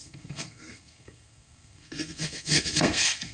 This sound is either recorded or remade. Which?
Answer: remade